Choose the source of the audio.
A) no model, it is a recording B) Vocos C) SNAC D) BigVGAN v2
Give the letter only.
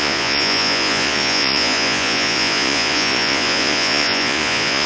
B